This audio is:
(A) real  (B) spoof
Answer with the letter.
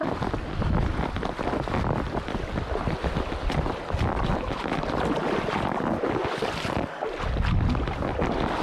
A